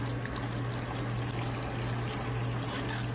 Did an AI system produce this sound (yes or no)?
no